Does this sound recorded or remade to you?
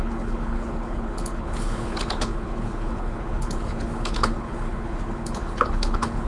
remade